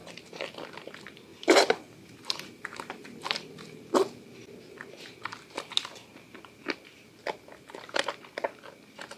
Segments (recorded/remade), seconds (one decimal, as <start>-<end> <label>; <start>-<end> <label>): 0.0-1.3 recorded; 1.3-3.2 remade; 3.2-9.2 recorded